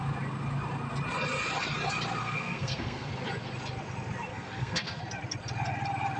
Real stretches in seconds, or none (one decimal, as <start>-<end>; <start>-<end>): 0.0-2.2; 3.1-4.3; 5.0-6.2